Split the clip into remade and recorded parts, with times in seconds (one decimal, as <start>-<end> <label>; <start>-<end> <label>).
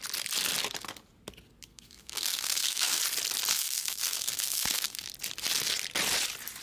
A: 0.0-1.7 recorded; 1.7-3.0 remade; 3.0-3.5 recorded; 3.5-5.1 remade; 5.1-6.6 recorded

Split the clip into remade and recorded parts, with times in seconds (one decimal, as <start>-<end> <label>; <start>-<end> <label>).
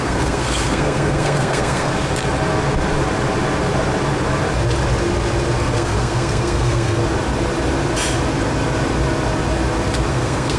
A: 0.0-1.9 remade; 1.9-5.6 recorded; 5.6-7.0 remade; 7.0-10.1 recorded; 10.1-10.6 remade